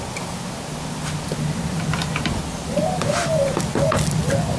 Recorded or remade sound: recorded